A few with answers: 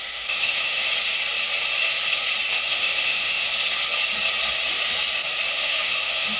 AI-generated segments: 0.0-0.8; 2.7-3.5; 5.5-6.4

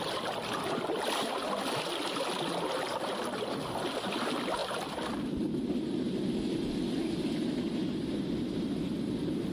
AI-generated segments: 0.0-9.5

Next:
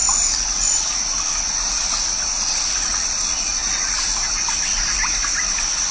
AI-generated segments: none

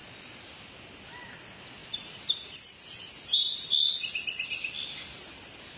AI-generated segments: none

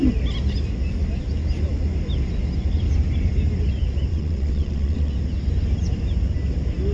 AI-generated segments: 4.1-5.1

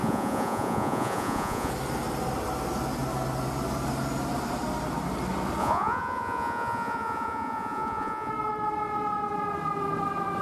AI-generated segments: 0.0-1.7; 5.6-8.3

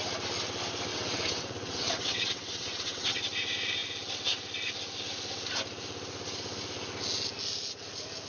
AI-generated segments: 0.9-3.2